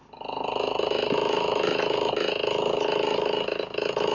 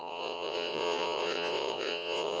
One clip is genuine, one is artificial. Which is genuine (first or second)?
first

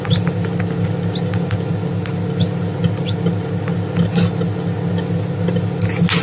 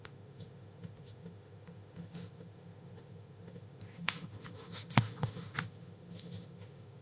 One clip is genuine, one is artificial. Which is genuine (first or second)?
first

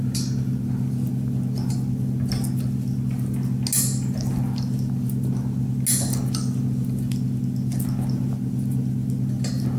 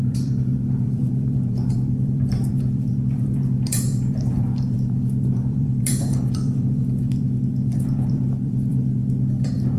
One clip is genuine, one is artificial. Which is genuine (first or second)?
first